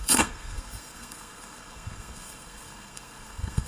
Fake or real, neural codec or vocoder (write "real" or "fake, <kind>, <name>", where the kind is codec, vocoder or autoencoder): fake, codec, SNAC